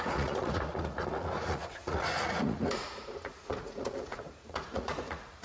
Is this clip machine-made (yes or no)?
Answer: yes